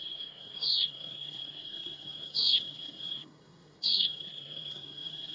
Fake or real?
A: fake